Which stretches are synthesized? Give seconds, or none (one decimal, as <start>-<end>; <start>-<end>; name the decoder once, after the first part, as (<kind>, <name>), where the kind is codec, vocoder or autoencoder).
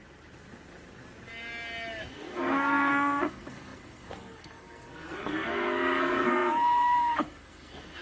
2.1-8.0 (codec, SNAC)